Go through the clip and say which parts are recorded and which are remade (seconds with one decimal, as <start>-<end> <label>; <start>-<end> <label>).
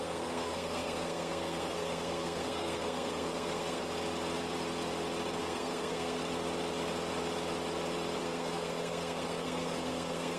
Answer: 0.0-3.8 remade; 3.8-5.4 recorded; 5.4-6.2 remade; 6.2-8.2 recorded; 8.2-10.4 remade